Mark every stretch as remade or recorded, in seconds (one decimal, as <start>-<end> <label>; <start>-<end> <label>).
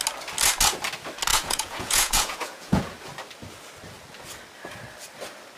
0.0-1.3 recorded; 1.3-2.8 remade; 2.8-5.6 recorded